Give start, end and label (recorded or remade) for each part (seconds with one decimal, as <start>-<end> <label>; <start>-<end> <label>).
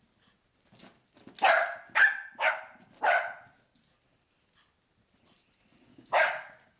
0.0-5.9 recorded; 5.9-6.8 remade